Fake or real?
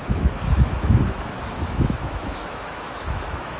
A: fake